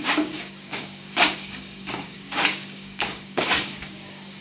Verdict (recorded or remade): remade